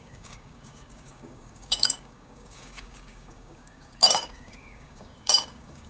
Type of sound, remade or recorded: remade